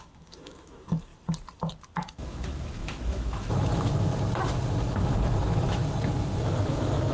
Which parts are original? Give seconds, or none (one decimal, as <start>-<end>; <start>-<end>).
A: 1.1-2.0; 4.1-4.9; 5.8-6.6